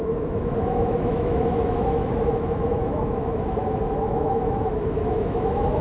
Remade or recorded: remade